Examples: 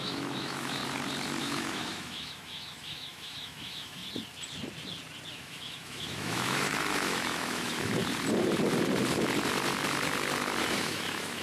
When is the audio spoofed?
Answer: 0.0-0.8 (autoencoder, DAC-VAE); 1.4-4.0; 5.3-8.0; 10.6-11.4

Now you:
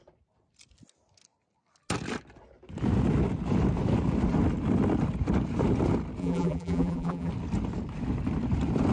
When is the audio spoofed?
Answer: 6.2-7.3 (vocoder, BigVGAN v2)

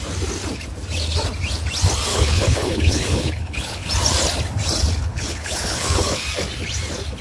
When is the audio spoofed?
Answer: 2.1-3.9 (codec, HILCodec); 5.1-6.2

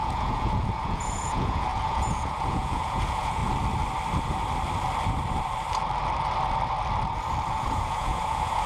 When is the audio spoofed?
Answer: 0.0-3.4 (vocoder, Vocos); 7.5-8.7

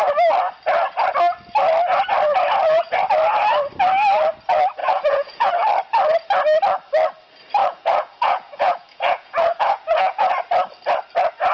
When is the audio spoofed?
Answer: 4.8-5.5 (vocoder, Vocos); 7.6-10.3

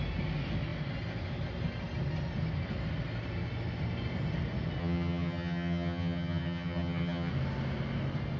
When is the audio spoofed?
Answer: 4.8-7.3 (vocoder, HiFi-GAN)